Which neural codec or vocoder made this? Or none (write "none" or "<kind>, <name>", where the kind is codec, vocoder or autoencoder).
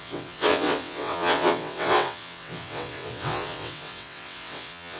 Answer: vocoder, WaveNeXt